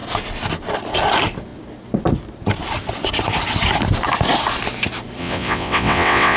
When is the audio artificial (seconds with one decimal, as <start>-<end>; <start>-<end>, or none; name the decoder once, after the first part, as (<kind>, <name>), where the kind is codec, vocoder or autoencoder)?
5.2-6.4 (vocoder, WaveNeXt)